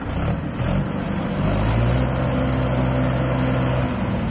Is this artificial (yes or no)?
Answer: no